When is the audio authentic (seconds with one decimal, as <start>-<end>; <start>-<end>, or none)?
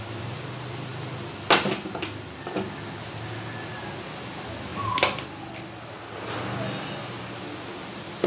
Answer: 0.0-8.3